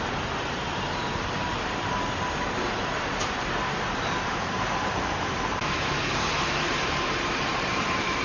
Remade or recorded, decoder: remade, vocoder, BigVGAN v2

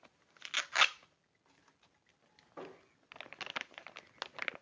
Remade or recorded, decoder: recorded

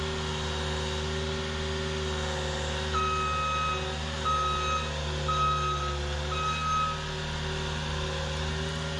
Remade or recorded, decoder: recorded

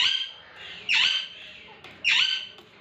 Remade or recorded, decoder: recorded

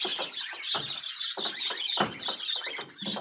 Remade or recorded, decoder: recorded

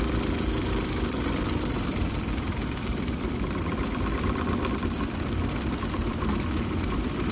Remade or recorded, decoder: remade, vocoder, BigVGAN v2